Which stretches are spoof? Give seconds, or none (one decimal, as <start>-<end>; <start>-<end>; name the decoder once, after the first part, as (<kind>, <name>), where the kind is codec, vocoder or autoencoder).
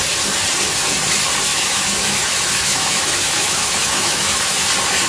1.5-4.6 (autoencoder, DAC-VAE)